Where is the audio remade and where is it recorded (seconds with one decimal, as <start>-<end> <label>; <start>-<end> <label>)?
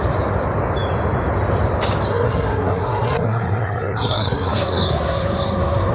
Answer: 0.0-2.1 recorded; 2.1-5.9 remade